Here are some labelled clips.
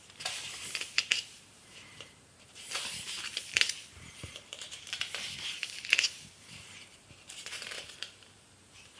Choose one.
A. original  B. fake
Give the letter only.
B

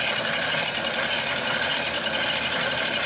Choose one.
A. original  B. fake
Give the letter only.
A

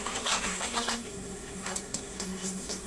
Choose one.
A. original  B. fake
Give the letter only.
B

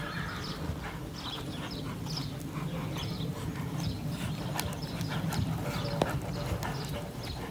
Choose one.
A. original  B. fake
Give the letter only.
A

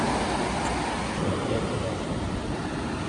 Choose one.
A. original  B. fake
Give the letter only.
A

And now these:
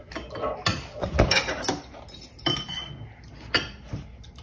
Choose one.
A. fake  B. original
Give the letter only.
B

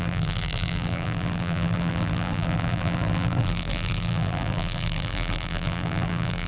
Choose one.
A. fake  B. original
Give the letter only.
A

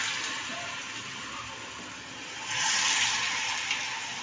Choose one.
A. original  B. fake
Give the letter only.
A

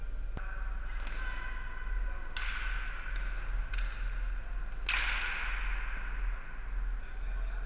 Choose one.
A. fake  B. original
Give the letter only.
B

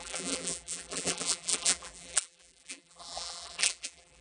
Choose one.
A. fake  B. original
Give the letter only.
A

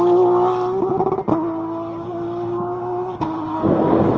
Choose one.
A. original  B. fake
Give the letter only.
A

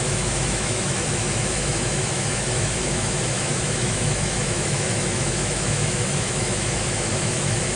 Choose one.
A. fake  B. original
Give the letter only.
A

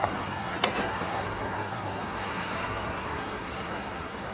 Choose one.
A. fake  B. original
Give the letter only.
A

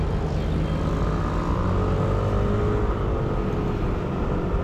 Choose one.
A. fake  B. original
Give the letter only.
B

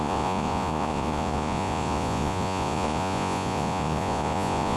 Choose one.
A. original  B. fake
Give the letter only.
B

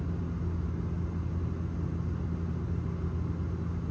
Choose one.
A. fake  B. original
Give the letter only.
B